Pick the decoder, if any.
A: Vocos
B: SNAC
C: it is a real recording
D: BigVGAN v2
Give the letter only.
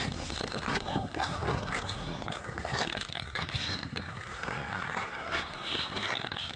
B